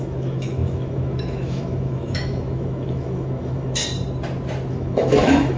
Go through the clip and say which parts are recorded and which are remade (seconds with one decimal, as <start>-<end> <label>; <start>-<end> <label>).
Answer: 0.0-3.8 remade; 3.8-4.7 recorded; 4.7-5.6 remade